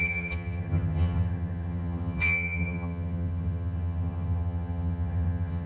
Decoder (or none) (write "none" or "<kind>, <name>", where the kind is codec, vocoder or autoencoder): vocoder, HiFi-GAN